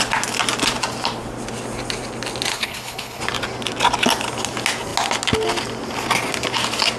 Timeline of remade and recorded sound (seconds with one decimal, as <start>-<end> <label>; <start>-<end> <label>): 0.0-2.5 recorded; 2.5-3.2 remade; 3.2-7.0 recorded